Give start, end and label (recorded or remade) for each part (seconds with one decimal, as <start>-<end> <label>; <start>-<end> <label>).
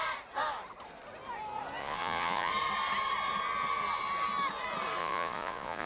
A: 0.0-1.8 recorded; 1.8-2.5 remade; 2.5-5.0 recorded; 5.0-5.9 remade